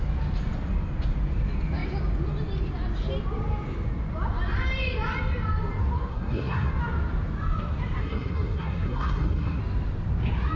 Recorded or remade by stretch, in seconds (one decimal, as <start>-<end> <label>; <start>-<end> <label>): 0.0-6.1 recorded; 6.1-6.7 remade; 6.7-8.0 recorded; 8.0-9.6 remade; 9.6-10.6 recorded